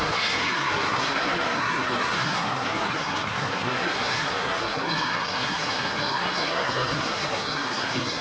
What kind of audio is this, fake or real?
fake